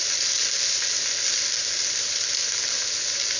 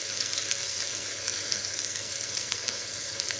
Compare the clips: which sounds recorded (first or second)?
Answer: first